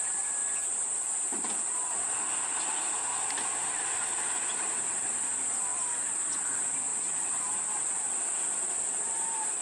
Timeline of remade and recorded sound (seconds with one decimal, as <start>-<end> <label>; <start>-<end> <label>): 0.0-0.4 recorded; 0.4-1.1 remade; 1.1-9.6 recorded